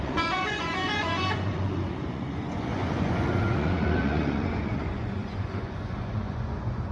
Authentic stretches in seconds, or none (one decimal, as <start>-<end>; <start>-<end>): none